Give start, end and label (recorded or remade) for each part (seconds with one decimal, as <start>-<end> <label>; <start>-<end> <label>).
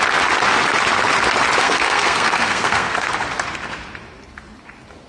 0.0-1.6 recorded; 1.6-3.1 remade; 3.1-5.1 recorded